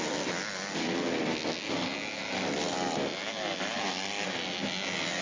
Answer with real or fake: real